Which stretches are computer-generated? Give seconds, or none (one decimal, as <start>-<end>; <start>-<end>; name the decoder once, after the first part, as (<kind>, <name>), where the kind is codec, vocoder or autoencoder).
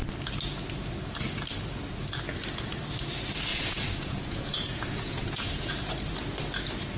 3.5-5.7 (vocoder, Vocos)